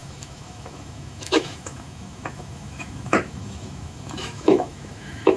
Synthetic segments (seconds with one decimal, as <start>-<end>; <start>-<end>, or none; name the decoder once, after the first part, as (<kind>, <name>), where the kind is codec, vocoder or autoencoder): 0.0-5.4 (autoencoder, DAC-VAE)

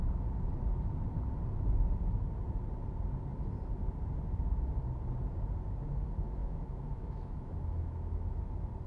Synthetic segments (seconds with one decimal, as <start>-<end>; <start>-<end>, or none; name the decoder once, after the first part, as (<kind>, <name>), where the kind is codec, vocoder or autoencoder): 6.4-8.4 (autoencoder, DAC-VAE)

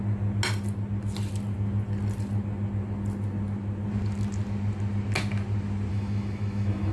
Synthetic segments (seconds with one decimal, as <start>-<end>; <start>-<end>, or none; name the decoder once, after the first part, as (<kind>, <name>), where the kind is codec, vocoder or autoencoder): 5.9-6.9 (autoencoder, DAC-VAE)